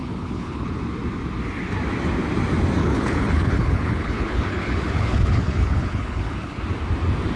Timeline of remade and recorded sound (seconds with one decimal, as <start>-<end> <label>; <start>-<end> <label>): 0.0-0.8 remade; 0.8-2.8 recorded; 2.8-6.6 remade; 6.6-7.4 recorded